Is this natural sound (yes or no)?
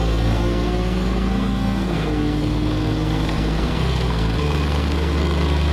no